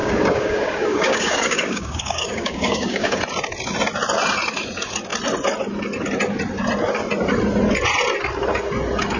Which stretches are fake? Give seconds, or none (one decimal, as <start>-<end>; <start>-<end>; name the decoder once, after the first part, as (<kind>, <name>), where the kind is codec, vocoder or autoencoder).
0.0-3.2 (codec, DAC)